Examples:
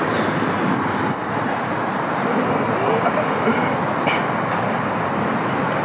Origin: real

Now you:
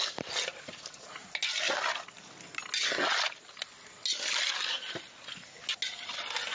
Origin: real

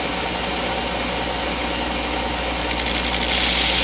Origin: real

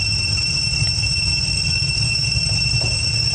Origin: real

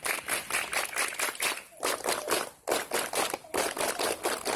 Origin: real